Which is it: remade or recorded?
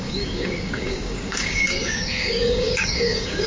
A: remade